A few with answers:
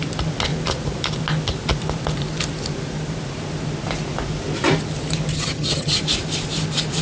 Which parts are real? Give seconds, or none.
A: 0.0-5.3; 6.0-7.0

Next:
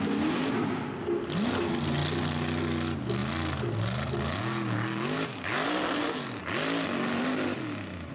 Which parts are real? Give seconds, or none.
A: 0.0-8.1